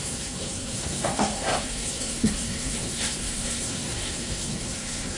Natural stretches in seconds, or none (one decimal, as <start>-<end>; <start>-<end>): none